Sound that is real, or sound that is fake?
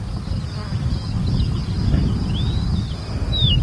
real